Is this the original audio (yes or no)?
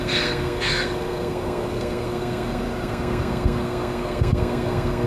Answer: no